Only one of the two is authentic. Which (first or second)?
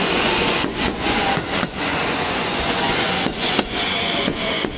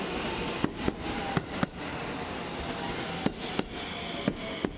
second